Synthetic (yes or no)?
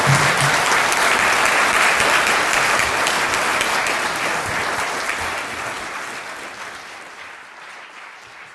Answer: no